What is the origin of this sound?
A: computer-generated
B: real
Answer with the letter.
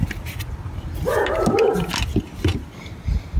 B